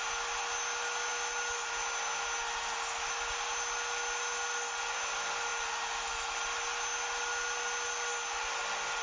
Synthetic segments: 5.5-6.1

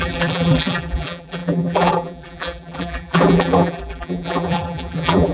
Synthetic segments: 0.0-5.3